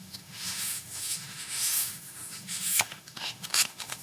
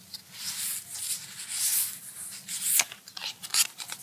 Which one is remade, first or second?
first